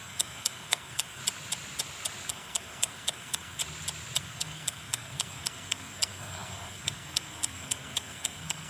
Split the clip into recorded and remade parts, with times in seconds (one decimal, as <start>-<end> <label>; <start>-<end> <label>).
0.0-1.2 remade; 1.2-2.3 recorded; 2.3-3.6 remade; 3.6-4.2 recorded; 4.2-8.7 remade